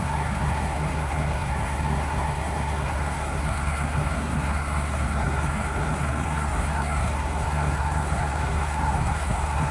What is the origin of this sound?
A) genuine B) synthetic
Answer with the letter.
B